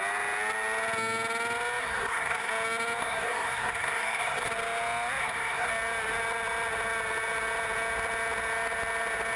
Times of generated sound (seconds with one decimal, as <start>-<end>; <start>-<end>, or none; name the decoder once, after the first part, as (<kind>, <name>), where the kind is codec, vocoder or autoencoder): 1.8-2.5 (codec, SNAC); 3.0-4.5; 5.2-5.7